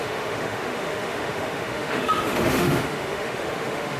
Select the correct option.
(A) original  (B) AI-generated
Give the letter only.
B